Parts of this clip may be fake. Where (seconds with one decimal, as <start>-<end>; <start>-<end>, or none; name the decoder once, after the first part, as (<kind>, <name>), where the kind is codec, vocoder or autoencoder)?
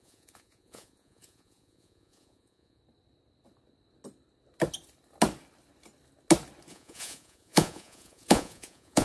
0.0-2.8 (vocoder, Vocos); 6.7-9.0